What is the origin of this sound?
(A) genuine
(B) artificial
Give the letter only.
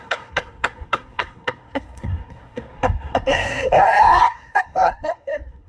B